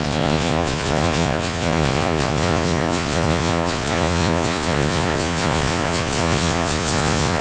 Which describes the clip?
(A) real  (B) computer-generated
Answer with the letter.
B